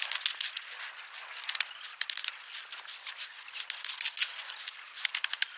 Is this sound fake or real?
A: real